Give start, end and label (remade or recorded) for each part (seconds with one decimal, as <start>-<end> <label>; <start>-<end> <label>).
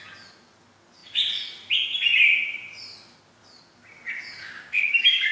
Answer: 0.0-4.4 recorded; 4.4-5.3 remade